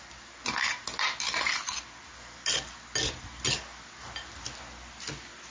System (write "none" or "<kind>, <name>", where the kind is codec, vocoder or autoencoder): none